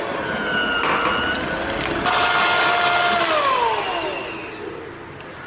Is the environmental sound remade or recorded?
recorded